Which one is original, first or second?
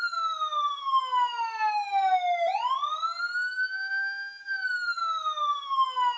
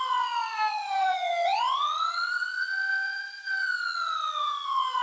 first